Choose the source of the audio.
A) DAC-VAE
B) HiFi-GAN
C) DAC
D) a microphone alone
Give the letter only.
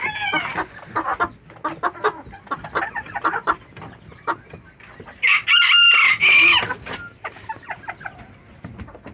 D